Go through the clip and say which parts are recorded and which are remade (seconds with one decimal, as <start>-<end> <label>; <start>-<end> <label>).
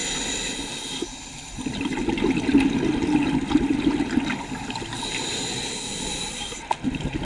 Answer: 0.0-7.2 recorded